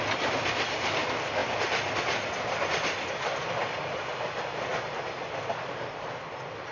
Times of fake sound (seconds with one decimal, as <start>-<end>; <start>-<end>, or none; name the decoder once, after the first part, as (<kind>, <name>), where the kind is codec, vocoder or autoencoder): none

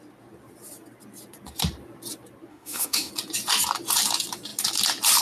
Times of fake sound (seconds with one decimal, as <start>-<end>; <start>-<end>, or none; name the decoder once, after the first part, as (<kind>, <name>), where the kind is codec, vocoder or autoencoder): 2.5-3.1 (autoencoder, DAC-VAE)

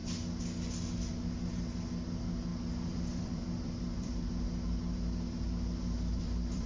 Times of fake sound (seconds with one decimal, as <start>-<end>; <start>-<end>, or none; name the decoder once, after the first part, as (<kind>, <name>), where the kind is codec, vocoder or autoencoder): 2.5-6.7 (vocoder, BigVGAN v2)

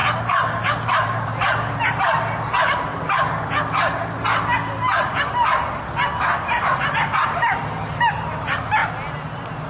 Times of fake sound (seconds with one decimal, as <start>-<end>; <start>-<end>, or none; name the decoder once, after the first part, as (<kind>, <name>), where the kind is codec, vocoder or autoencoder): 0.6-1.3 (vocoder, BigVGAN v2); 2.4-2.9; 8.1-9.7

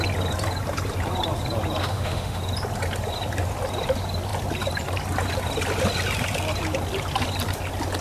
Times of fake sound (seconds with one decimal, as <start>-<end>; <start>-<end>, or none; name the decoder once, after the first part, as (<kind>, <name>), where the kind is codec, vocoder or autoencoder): 1.8-2.4 (autoencoder, DAC-VAE)

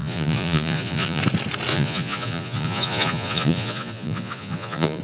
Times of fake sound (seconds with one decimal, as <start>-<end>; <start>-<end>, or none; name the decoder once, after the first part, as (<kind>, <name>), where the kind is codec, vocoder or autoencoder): 0.0-1.2 (vocoder, Vocos); 1.7-5.0